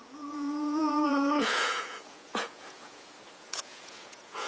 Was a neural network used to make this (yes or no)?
yes